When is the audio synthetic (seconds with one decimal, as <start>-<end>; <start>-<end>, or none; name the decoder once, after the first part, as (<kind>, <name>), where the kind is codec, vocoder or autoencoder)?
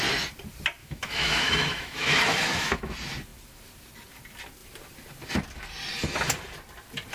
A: 0.8-2.9 (autoencoder, DAC-VAE)